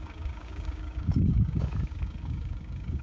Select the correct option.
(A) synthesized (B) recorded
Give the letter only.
A